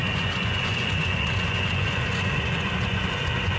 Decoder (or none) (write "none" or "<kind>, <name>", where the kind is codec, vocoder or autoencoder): vocoder, Vocos